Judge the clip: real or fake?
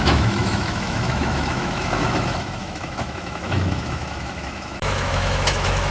fake